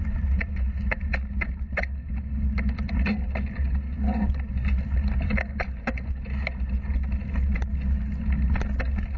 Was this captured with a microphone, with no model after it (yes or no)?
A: yes